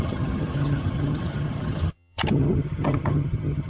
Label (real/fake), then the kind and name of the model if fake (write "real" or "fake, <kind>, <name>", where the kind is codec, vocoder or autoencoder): fake, vocoder, HiFi-GAN